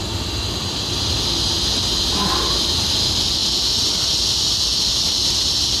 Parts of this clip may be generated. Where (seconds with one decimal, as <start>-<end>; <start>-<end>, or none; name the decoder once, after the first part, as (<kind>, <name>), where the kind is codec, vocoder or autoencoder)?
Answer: none